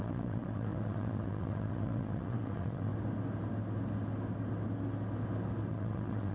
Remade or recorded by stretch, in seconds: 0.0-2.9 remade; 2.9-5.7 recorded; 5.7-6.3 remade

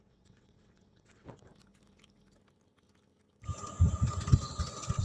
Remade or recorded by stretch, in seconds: 0.0-1.5 remade; 1.5-4.5 recorded; 4.5-5.0 remade

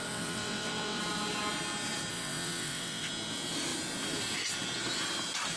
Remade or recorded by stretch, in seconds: 0.0-1.0 remade; 1.0-2.1 recorded; 2.1-3.1 remade; 3.1-5.6 recorded